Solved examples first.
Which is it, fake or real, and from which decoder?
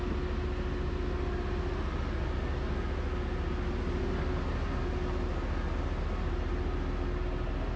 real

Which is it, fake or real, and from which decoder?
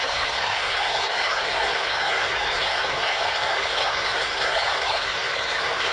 fake, codec, SNAC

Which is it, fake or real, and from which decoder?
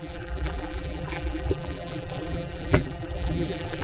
fake, vocoder, BigVGAN v2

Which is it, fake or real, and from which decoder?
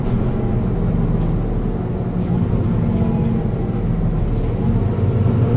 real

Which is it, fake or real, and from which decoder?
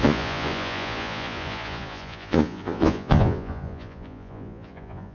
fake, vocoder, Vocos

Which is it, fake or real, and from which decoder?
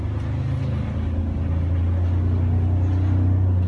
real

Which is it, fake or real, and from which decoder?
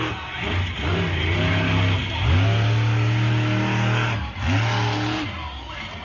real